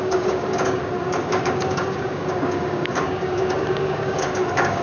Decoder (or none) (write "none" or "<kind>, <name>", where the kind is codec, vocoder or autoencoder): codec, DAC